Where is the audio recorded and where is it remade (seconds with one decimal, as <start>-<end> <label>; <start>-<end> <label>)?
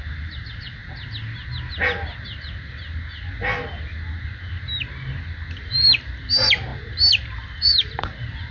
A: 0.0-0.8 remade; 0.8-5.6 recorded; 5.6-8.5 remade